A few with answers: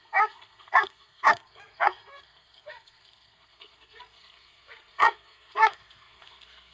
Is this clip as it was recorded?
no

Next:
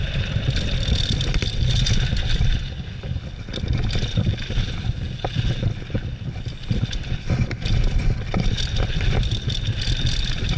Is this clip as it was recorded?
yes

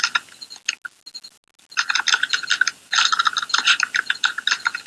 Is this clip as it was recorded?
yes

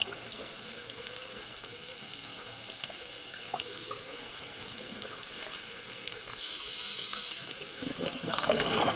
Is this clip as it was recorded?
no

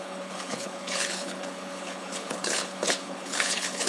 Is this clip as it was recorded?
no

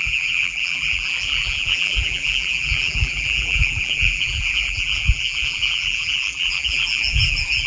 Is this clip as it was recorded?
no